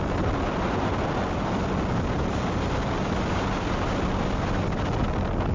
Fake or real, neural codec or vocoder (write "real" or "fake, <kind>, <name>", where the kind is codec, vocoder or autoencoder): real